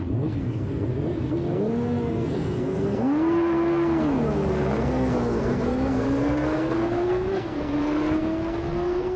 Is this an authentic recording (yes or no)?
no